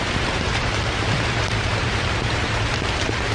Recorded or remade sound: remade